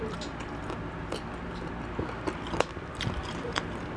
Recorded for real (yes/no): yes